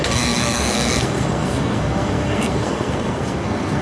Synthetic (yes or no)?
yes